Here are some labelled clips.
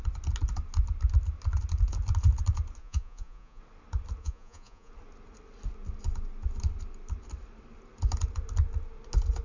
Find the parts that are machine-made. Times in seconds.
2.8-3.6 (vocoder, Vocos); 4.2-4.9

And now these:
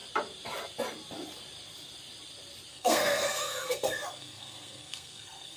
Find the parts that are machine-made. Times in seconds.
2.7-5.6 (codec, SNAC)

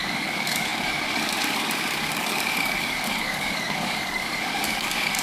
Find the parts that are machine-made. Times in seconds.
0.0-5.2 (codec, DAC)

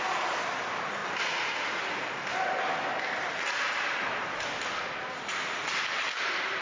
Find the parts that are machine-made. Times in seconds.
0.0-1.0 (vocoder, BigVGAN v2); 5.0-6.6

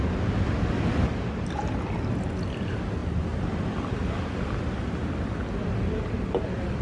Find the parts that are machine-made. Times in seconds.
none